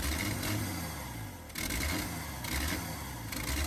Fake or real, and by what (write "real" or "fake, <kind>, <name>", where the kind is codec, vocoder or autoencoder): real